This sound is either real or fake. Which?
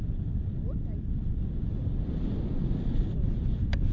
real